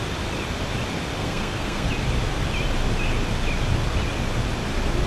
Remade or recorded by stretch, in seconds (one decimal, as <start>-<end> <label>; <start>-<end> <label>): 0.0-1.2 recorded; 1.2-1.9 remade; 1.9-5.1 recorded